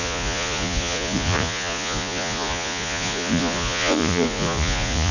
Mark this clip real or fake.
fake